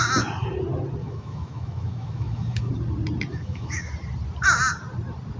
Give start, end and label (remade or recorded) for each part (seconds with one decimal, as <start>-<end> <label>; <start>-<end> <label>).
0.0-1.0 recorded; 1.0-2.7 remade; 2.7-3.3 recorded; 3.3-3.9 remade; 3.9-5.4 recorded